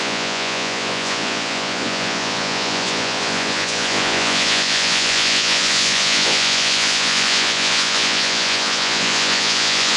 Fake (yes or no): yes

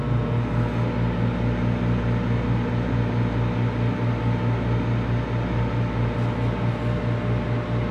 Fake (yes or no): no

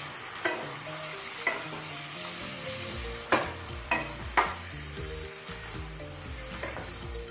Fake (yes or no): yes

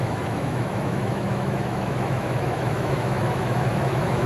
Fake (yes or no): yes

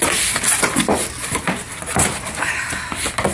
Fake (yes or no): no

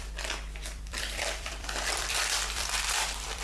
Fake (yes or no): yes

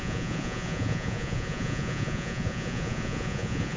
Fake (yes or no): yes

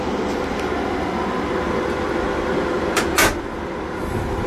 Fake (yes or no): no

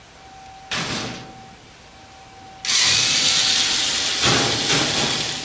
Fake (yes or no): no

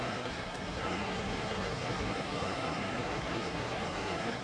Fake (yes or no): yes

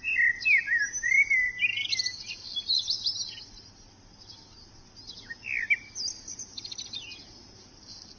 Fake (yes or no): no